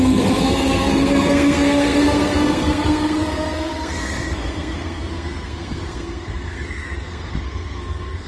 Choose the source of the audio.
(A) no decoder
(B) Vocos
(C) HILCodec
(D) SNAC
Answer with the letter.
D